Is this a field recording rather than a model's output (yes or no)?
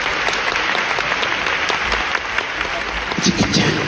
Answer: yes